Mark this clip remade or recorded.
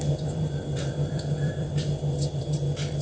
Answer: remade